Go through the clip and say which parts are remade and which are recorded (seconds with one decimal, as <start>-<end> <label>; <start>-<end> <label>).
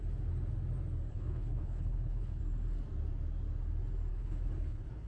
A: 0.0-1.1 recorded; 1.1-2.4 remade; 2.4-4.1 recorded; 4.1-5.1 remade